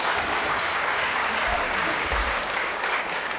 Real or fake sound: fake